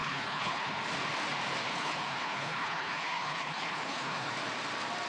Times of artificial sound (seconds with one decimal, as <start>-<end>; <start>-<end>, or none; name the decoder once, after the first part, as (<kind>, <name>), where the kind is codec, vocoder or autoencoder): 0.0-0.7 (codec, HILCodec); 1.7-4.3